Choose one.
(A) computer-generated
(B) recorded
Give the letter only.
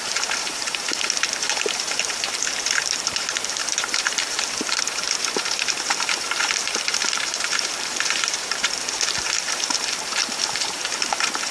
A